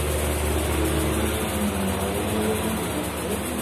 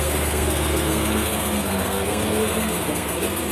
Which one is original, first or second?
first